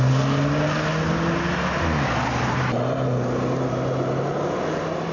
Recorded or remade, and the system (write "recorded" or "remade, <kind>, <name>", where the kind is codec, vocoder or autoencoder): recorded